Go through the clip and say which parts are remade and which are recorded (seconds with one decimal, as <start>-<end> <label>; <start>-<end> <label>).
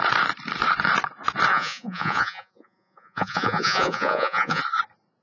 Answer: 0.0-1.5 recorded; 1.5-4.6 remade; 4.6-5.2 recorded